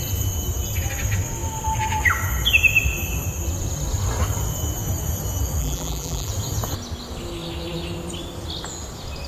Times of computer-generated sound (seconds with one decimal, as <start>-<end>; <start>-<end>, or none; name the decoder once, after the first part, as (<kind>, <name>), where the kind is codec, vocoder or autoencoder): 5.6-6.3 (vocoder, BigVGAN v2)